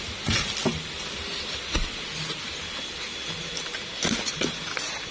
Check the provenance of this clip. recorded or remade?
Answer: recorded